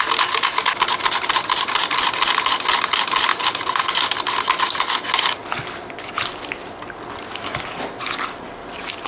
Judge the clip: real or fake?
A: real